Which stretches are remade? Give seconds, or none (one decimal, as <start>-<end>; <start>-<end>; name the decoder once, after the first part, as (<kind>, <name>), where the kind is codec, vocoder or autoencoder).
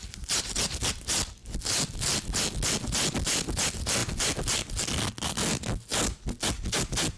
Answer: none